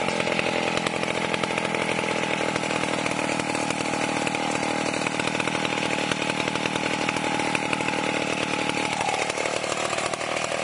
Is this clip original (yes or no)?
yes